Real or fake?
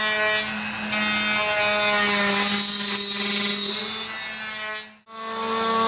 real